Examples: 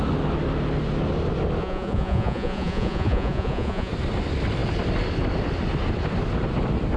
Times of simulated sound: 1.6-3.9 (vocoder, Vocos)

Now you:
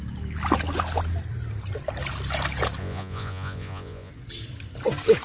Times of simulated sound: 2.8-4.1 (vocoder, Vocos)

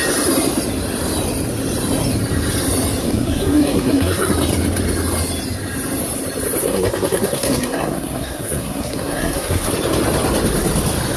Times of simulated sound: 3.0-4.3 (codec, SNAC); 6.6-9.7